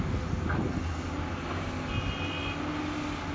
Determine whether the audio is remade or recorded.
recorded